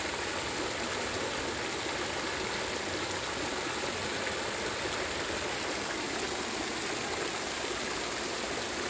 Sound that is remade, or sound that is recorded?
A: recorded